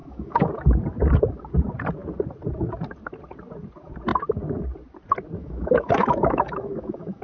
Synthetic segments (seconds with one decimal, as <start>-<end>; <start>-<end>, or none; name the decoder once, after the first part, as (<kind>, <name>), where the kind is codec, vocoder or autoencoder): 0.0-0.5 (autoencoder, DAC-VAE); 5.4-7.2